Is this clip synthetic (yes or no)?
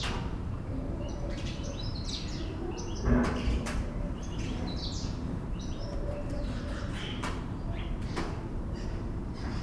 yes